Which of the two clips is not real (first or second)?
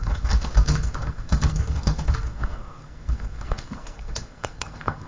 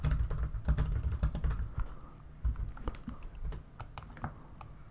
first